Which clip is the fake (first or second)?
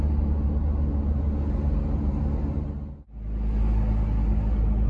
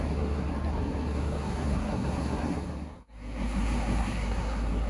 second